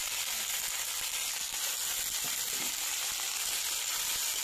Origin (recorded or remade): recorded